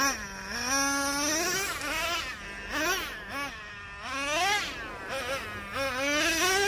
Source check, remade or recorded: recorded